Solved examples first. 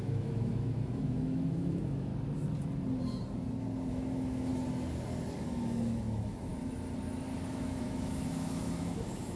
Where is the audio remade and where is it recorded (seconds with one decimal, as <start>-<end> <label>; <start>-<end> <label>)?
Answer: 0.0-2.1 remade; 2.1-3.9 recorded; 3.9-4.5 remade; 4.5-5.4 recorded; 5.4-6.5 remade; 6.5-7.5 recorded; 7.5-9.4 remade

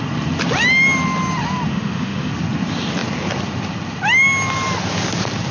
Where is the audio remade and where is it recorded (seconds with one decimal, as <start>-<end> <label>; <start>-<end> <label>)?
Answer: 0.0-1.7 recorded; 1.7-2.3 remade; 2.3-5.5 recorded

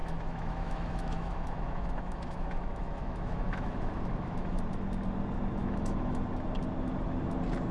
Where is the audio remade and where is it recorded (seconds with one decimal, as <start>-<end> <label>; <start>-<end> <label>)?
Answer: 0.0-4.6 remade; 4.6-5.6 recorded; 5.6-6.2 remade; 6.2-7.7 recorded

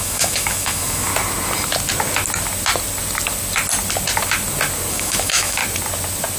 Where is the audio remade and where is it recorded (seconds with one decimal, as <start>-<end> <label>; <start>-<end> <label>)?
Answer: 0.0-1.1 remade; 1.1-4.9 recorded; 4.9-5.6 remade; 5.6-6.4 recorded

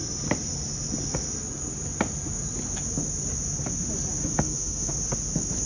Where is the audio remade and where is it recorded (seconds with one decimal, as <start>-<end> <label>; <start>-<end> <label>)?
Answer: 0.0-4.2 recorded; 4.2-4.9 remade; 4.9-5.7 recorded